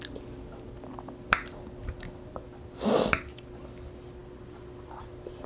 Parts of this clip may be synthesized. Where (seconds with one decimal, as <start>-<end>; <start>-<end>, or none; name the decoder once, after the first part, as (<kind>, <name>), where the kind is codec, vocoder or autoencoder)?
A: none